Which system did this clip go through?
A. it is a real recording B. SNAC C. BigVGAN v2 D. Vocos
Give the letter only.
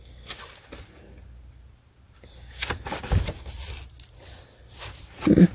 A